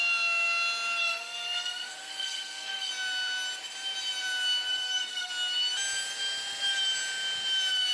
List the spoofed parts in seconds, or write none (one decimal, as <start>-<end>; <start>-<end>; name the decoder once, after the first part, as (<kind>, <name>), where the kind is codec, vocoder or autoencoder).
1.0-2.9 (codec, SNAC); 4.7-5.3